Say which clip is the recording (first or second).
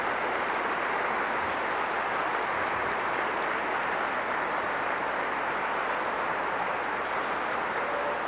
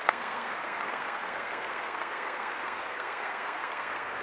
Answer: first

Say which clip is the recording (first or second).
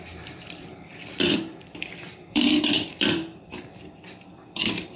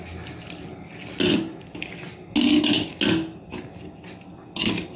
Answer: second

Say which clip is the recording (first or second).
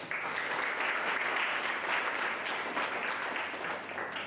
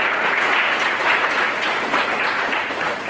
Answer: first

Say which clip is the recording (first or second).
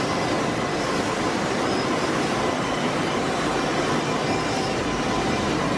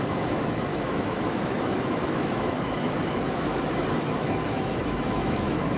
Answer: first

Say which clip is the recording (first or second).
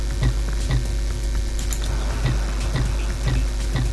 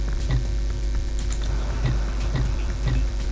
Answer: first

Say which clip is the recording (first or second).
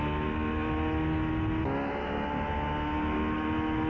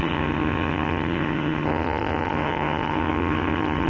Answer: first